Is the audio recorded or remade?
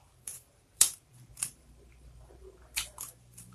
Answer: remade